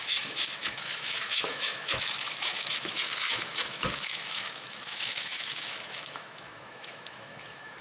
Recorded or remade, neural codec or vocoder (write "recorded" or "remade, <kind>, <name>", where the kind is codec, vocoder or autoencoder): remade, autoencoder, DAC-VAE